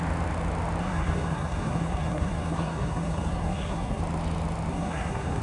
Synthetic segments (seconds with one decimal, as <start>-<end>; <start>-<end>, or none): 0.8-4.0; 4.7-5.4

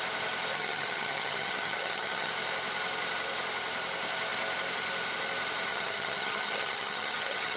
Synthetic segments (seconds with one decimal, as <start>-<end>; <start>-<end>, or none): 0.5-2.3; 5.7-7.6